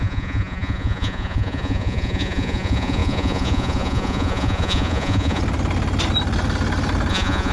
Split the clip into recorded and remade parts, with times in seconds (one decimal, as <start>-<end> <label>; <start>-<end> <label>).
0.0-5.4 remade; 5.4-7.1 recorded; 7.1-7.5 remade